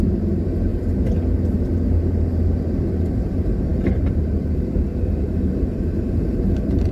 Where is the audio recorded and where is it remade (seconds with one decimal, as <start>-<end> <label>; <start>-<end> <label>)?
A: 0.0-0.7 remade; 0.7-3.1 recorded; 3.1-6.9 remade